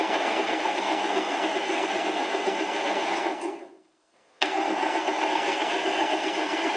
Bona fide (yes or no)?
no